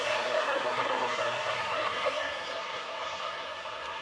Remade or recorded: remade